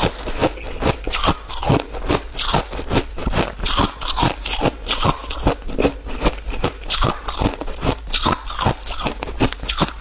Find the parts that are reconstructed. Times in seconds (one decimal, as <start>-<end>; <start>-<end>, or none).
none